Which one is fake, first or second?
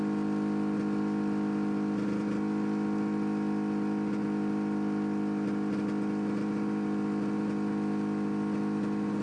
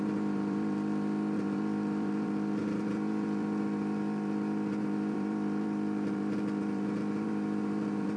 second